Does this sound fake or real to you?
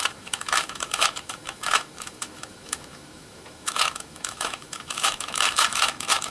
fake